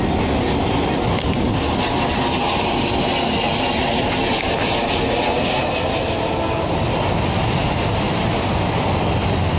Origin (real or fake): real